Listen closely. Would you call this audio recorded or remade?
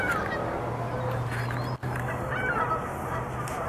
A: recorded